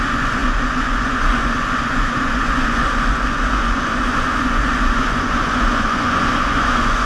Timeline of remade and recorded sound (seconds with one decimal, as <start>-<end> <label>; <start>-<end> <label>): 0.0-7.1 remade